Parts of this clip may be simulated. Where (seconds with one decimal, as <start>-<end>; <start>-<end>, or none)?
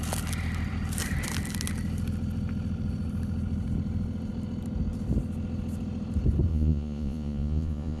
6.5-8.0